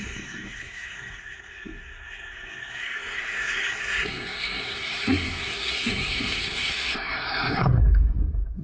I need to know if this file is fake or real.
fake